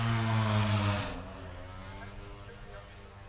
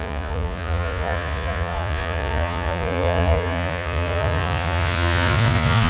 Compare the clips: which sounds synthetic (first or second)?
second